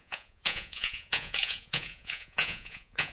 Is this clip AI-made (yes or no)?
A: yes